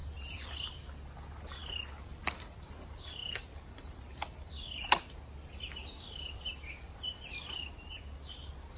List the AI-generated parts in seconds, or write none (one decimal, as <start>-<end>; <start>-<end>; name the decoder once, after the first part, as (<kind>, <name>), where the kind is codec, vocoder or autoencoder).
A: 0.0-0.8 (vocoder, BigVGAN v2); 1.6-2.7; 3.2-4.5; 5.8-8.0